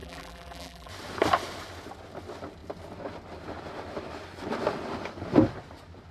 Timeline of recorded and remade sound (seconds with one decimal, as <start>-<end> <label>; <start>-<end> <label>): 0.0-0.9 remade; 0.9-6.1 recorded